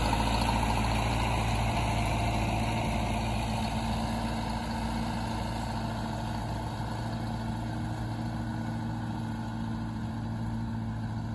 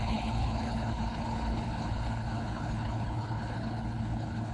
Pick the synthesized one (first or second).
second